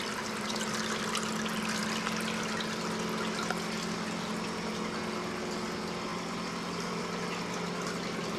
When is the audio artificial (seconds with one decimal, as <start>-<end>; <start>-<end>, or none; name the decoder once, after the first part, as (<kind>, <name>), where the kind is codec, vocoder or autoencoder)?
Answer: 6.1-7.0 (vocoder, BigVGAN v2)

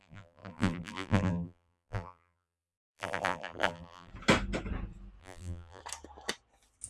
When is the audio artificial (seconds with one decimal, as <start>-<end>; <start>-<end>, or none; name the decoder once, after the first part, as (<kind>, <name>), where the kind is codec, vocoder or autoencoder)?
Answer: 0.0-4.1 (vocoder, BigVGAN v2); 5.2-5.8

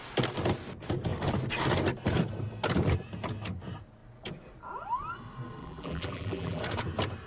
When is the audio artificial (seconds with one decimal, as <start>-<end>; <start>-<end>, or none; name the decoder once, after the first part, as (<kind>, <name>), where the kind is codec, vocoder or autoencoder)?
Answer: 5.6-6.6 (vocoder, BigVGAN v2)

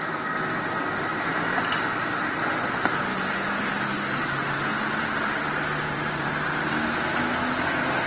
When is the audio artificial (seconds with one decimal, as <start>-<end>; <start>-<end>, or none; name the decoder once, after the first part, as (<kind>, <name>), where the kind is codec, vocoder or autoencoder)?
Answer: 1.1-2.1 (vocoder, BigVGAN v2); 3.1-3.8; 4.7-6.7

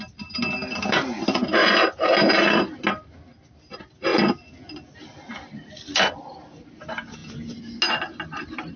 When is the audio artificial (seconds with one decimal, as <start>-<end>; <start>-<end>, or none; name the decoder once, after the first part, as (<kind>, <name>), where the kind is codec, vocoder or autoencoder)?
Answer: 0.0-1.6 (vocoder, BigVGAN v2); 3.5-4.1; 5.7-7.2; 7.9-8.8

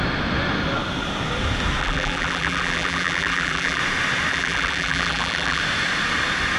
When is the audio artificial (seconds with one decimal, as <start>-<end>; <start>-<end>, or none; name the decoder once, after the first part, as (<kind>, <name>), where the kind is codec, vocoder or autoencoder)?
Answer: 1.8-3.8 (vocoder, BigVGAN v2); 4.3-5.6

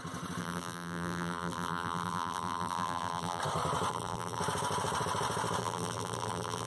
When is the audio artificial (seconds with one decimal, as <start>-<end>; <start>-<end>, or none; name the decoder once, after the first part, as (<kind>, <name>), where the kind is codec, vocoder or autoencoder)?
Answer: 0.4-3.4 (vocoder, BigVGAN v2); 3.9-4.4; 5.6-6.7